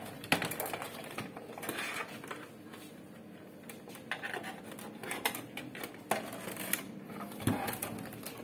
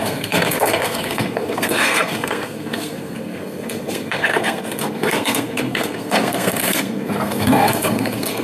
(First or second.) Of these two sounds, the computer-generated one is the second